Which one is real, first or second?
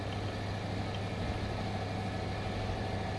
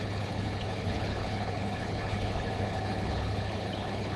first